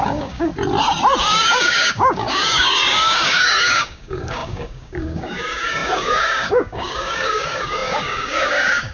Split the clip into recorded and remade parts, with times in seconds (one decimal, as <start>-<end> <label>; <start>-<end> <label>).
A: 0.0-0.5 remade; 0.5-1.2 recorded; 1.2-8.9 remade